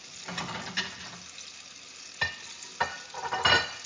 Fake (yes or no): no